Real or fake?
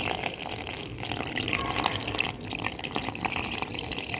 real